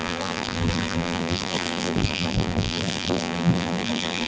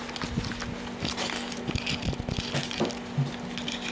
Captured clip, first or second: second